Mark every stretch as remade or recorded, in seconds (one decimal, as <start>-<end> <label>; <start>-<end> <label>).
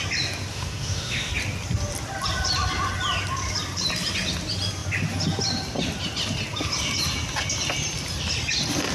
0.0-0.5 recorded; 0.5-1.3 remade; 1.3-8.9 recorded